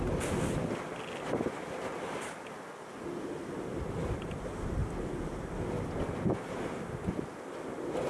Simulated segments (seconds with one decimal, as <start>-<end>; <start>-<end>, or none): none

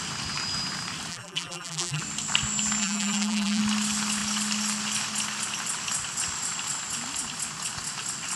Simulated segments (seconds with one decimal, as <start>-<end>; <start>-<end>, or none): 1.1-2.0; 2.8-3.6